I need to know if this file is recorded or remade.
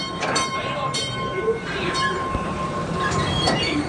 remade